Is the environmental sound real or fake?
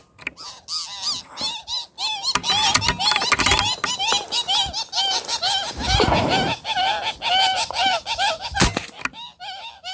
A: real